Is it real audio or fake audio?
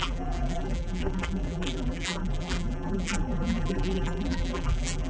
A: fake